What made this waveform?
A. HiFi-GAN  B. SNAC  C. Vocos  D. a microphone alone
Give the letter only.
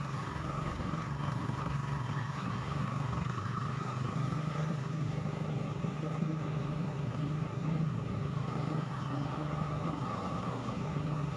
B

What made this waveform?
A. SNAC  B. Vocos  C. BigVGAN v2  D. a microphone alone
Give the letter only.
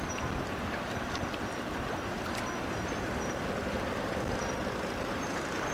D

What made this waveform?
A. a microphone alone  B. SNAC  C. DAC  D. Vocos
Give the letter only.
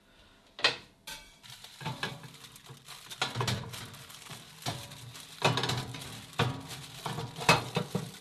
A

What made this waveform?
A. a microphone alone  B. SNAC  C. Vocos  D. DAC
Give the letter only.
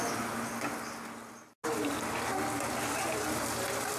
A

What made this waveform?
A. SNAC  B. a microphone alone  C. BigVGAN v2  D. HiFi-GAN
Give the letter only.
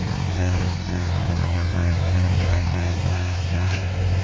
A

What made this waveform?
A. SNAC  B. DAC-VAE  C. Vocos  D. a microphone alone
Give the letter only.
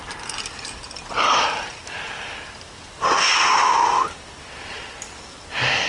D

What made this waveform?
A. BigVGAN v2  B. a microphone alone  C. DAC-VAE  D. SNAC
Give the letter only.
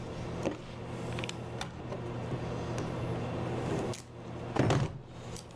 B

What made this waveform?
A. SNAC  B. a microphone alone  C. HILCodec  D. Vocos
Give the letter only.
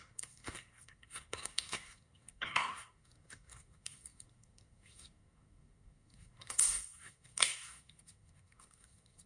A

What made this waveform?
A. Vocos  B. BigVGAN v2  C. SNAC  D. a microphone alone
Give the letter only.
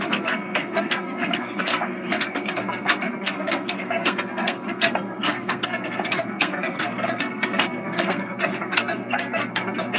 C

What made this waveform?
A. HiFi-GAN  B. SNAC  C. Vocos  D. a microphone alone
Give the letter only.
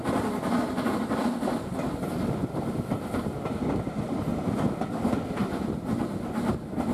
D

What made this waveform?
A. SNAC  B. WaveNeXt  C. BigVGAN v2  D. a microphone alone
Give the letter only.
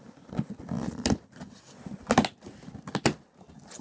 D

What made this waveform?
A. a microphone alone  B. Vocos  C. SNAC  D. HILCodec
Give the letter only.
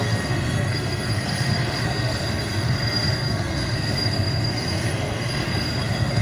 C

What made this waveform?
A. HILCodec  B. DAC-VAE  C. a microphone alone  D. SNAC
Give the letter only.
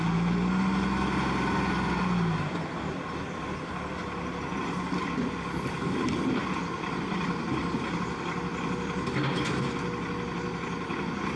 C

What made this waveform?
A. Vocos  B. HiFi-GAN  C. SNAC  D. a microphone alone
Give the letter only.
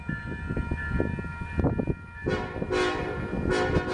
D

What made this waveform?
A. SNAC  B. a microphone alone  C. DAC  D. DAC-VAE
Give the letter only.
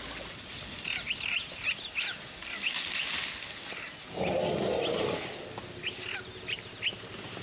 B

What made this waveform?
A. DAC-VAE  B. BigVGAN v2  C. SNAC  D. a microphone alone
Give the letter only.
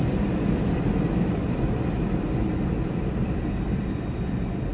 D